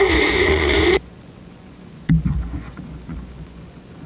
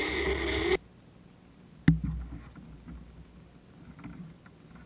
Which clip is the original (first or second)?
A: second